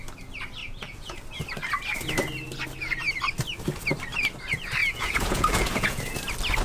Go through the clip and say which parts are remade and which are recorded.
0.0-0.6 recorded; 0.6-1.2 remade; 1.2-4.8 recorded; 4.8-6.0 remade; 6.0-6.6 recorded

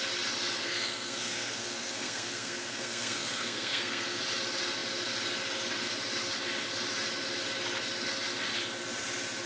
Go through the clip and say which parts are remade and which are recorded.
0.0-0.6 recorded; 0.6-4.2 remade; 4.2-9.5 recorded

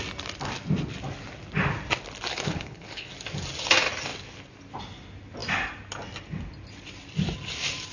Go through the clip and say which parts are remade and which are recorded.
0.0-2.3 recorded; 2.3-3.1 remade; 3.1-7.9 recorded

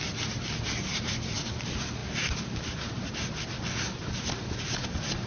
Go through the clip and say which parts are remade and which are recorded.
0.0-5.3 recorded